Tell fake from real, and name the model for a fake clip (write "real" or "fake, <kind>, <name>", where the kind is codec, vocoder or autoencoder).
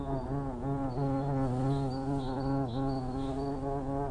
real